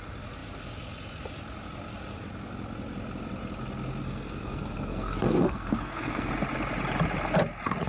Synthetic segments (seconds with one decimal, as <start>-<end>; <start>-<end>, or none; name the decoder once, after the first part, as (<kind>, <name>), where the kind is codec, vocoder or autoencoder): 4.0-6.3 (codec, SNAC)